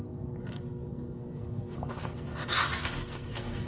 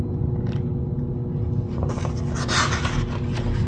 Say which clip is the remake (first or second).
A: first